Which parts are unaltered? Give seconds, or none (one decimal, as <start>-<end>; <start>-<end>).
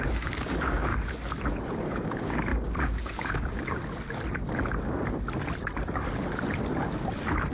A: 0.9-1.8; 3.8-7.5